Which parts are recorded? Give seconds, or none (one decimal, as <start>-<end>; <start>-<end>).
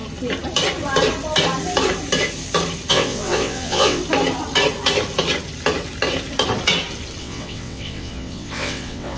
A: 0.0-2.9; 4.0-7.2